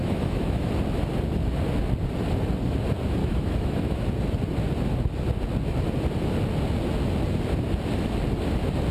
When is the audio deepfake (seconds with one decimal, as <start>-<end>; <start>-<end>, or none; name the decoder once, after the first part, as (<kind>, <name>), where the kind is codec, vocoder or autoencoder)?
0.0-0.7 (autoencoder, DAC-VAE); 3.2-4.0